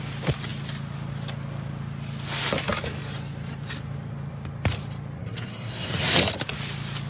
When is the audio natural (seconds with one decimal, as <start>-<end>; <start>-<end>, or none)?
0.0-5.2; 5.9-7.1